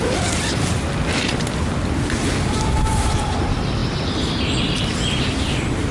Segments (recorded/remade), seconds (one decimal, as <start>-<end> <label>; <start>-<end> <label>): 0.0-5.9 recorded